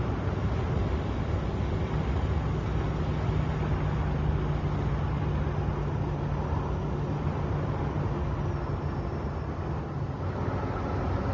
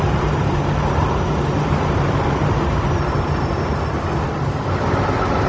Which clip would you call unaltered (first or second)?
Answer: first